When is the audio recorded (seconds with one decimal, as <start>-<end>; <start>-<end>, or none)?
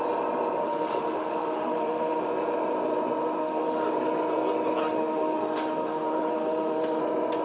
0.0-0.6; 2.2-3.4; 3.9-4.8; 7.0-7.4